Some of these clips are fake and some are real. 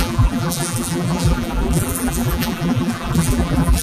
fake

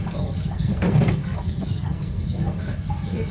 fake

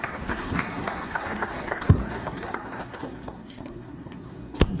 fake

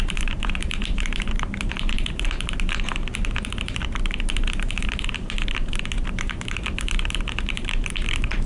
fake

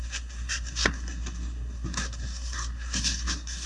fake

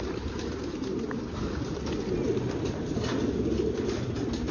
real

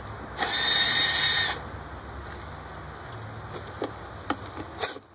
real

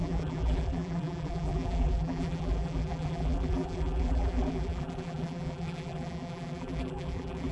fake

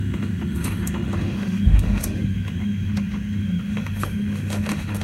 fake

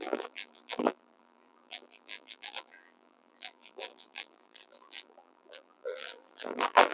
fake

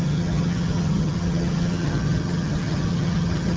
fake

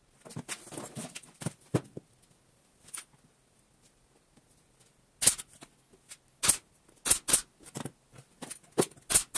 real